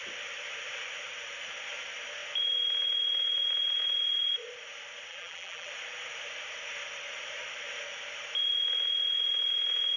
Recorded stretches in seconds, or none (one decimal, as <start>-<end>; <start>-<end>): 0.0-5.1; 5.7-10.0